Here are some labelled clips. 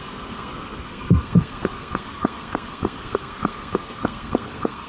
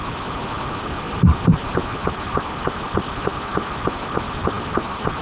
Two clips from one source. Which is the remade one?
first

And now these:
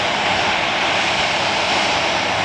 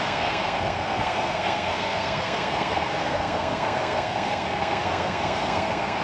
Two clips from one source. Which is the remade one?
second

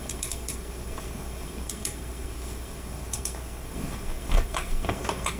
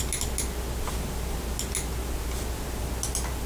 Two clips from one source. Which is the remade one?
first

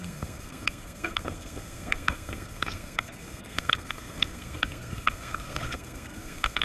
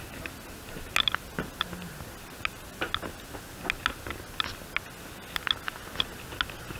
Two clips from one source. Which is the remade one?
first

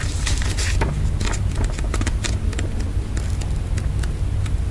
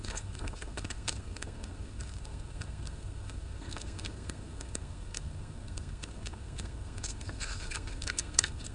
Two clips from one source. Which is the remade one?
second